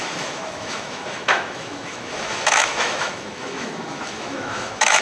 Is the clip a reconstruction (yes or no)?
yes